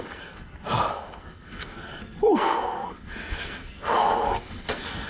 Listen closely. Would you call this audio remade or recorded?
remade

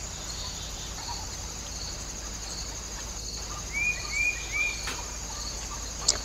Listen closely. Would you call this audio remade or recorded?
recorded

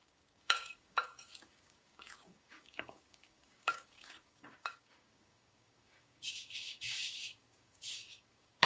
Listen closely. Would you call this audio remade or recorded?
remade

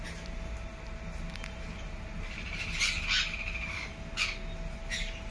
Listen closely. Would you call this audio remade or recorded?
recorded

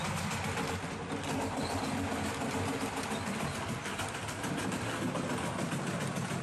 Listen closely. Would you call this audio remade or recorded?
recorded